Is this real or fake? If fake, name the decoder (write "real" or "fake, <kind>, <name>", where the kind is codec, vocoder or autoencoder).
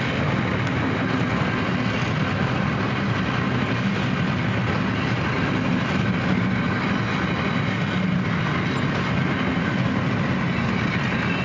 real